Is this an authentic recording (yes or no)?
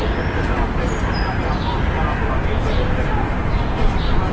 yes